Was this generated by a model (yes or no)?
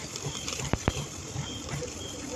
yes